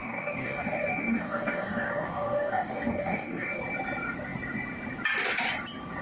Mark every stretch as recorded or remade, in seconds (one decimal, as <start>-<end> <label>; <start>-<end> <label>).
0.0-3.6 remade; 3.6-6.0 recorded